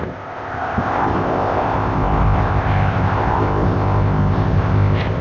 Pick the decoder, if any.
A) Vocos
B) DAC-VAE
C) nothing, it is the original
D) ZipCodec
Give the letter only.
D